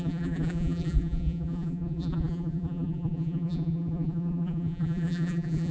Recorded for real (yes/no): no